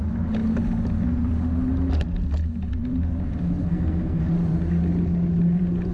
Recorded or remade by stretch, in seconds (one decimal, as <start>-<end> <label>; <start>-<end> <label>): 0.0-3.7 recorded; 3.7-4.2 remade; 4.2-5.9 recorded